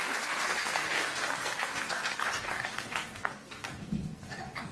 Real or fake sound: fake